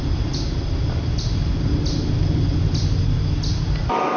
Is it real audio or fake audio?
real